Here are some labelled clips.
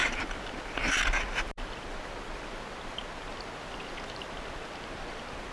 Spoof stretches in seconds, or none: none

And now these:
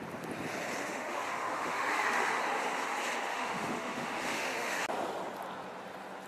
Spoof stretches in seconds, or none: 0.8-2.4 (autoencoder, DAC-VAE); 3.3-4.8